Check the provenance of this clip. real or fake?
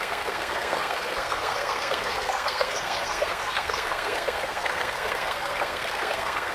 fake